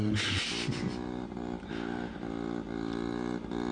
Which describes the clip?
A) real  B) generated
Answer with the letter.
A